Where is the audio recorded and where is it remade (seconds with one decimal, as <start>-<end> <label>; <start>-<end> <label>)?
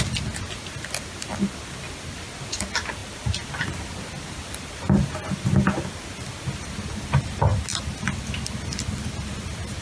0.0-9.8 recorded